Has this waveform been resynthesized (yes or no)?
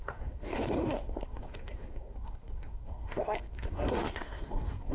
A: yes